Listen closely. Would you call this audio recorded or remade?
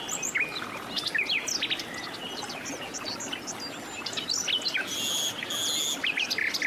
recorded